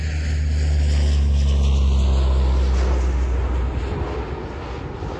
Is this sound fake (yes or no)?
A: no